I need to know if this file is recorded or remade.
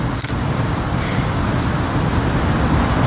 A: remade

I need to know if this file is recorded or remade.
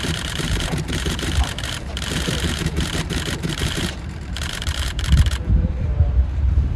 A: remade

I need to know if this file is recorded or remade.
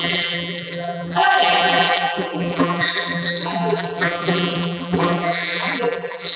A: remade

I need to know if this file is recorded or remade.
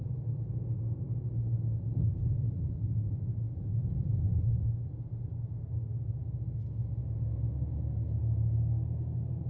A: recorded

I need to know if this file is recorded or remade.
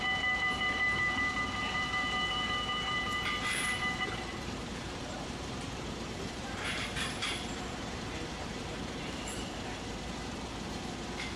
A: remade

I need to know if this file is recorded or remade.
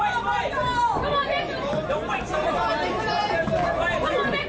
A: recorded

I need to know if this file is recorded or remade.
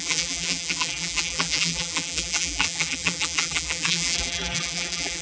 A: remade